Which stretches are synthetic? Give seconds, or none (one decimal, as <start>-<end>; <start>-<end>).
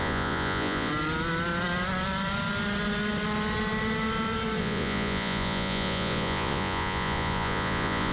0.0-0.9; 4.6-8.1